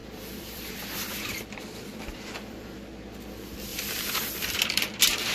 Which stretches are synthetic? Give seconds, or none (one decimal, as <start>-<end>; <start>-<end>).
0.0-1.6; 3.7-4.8